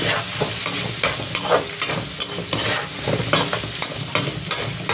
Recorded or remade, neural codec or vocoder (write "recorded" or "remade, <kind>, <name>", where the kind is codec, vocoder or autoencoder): recorded